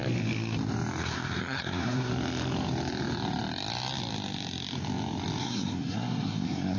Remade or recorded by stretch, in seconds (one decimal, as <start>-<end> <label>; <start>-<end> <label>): 0.0-1.0 recorded; 1.0-2.1 remade; 2.1-5.4 recorded; 5.4-6.8 remade